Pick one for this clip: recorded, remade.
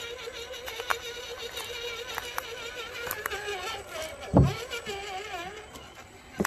recorded